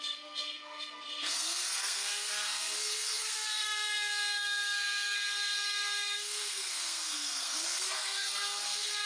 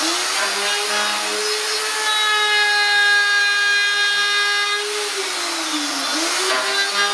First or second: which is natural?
second